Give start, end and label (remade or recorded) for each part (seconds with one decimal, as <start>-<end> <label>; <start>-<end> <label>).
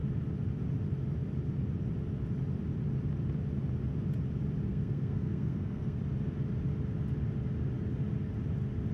0.0-4.7 recorded; 4.7-6.0 remade; 6.0-8.9 recorded